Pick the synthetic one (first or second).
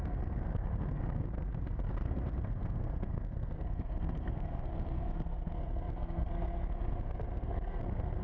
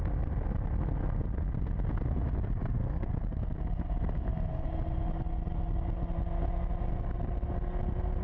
first